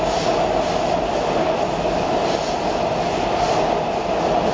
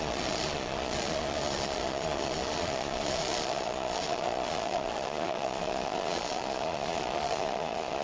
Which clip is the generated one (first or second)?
second